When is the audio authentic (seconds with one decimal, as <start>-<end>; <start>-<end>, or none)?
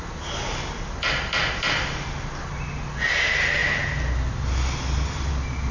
0.0-5.7